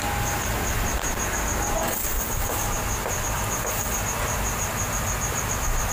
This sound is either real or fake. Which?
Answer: real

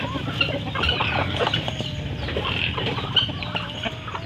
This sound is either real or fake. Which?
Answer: real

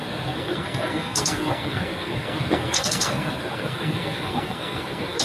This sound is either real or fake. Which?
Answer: fake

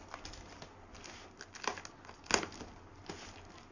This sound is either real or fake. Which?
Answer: real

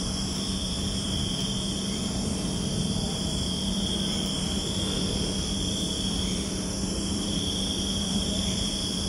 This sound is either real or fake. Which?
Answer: fake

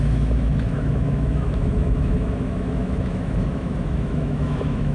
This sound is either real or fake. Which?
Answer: fake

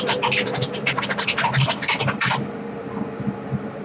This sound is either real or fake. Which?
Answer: fake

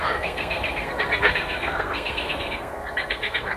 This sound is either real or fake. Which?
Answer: fake